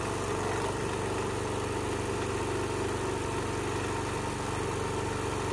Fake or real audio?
real